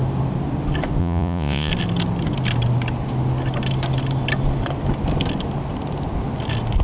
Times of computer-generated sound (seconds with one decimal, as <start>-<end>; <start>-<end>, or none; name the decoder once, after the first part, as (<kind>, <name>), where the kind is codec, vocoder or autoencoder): 1.0-1.7 (vocoder, Vocos)